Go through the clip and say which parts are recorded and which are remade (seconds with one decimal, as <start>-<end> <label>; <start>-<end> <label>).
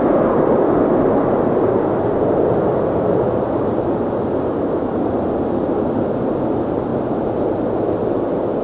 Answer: 0.0-8.6 recorded